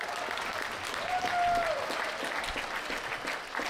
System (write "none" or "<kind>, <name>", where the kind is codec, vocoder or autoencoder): none